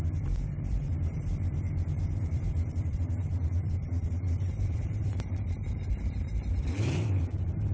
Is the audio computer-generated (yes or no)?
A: yes